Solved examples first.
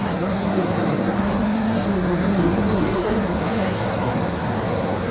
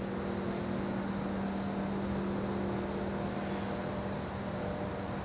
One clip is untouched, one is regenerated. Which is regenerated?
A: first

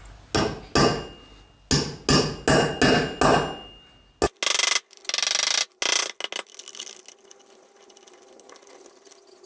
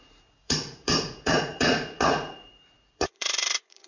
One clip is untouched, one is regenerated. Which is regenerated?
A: second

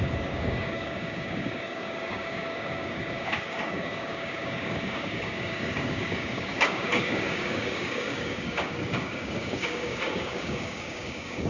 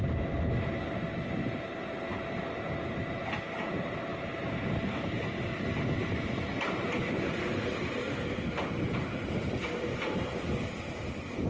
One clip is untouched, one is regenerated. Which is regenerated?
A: first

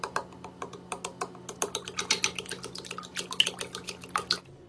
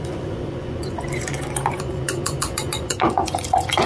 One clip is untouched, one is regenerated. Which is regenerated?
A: second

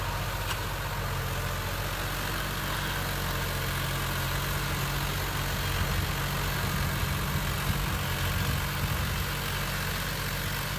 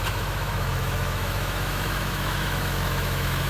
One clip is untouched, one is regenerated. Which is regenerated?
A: second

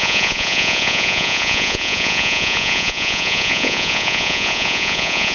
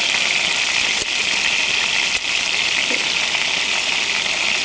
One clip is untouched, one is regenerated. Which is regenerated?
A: first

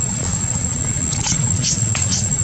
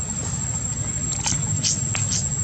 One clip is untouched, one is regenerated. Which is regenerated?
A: first